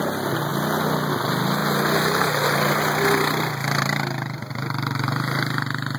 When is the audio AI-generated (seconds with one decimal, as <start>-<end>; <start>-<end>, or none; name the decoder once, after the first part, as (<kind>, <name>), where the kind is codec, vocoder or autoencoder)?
none